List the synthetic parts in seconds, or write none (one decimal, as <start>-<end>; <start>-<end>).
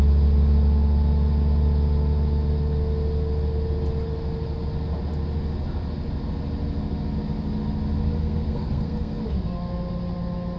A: 8.2-9.2